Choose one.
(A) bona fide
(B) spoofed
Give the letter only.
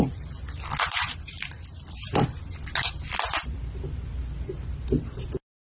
B